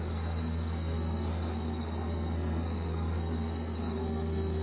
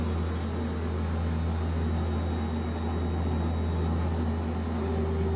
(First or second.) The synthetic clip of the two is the first